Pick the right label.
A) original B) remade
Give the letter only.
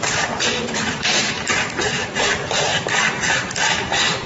B